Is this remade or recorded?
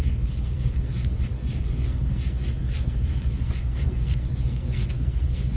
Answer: remade